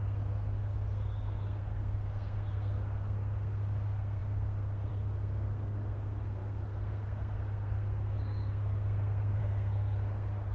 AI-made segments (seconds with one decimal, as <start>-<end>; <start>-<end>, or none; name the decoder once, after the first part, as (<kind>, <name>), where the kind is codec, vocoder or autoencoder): 0.0-10.5 (codec, SNAC)